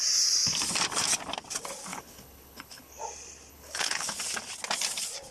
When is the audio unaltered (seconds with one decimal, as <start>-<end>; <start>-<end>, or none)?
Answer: 0.0-1.9; 3.0-3.5; 4.2-5.3